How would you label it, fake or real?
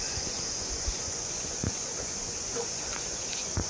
fake